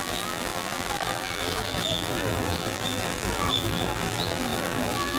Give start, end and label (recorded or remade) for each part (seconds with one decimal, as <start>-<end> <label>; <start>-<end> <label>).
0.0-5.2 remade